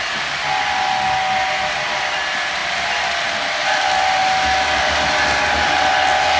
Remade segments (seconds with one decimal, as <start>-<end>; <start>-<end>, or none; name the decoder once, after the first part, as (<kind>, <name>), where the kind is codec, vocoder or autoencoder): none